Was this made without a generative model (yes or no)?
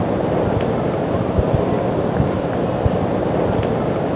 yes